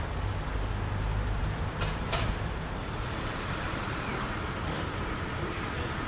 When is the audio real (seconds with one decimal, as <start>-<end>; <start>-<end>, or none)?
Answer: 0.0-1.4; 3.9-6.1

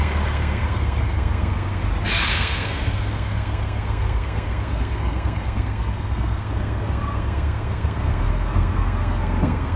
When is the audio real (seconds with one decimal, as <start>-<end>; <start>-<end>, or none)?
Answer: 1.8-2.3

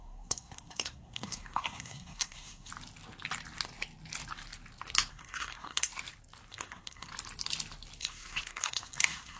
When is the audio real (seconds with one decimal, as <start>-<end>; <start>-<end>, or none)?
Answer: 2.7-5.1; 5.9-6.5; 7.1-8.0

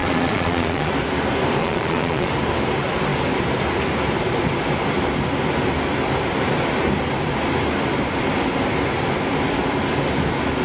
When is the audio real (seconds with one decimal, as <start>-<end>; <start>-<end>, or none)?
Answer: 0.9-1.6; 2.3-10.6